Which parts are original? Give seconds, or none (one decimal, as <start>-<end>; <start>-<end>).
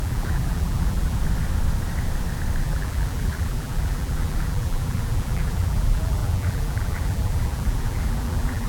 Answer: 1.2-2.6